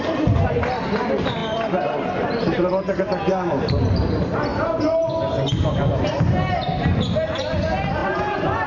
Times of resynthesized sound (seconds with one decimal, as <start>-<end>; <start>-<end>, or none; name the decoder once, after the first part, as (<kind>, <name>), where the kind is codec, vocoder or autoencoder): 0.0-4.5 (vocoder, BigVGAN v2); 7.0-8.7